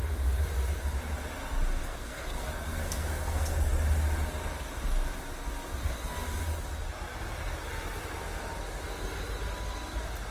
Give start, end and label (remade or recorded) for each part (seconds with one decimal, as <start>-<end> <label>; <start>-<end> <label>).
0.0-1.8 recorded; 1.8-3.7 remade; 3.7-10.3 recorded